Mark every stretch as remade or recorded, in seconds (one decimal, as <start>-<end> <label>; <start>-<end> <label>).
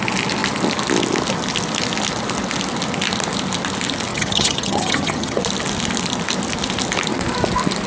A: 0.0-4.1 recorded; 4.1-5.4 remade; 5.4-7.9 recorded